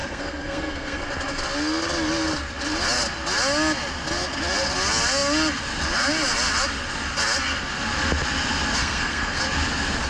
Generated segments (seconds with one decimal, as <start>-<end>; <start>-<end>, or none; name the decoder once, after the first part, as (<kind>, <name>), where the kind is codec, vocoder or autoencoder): 0.0-1.0 (codec, SNAC); 8.8-9.4